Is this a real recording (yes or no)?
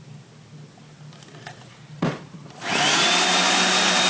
yes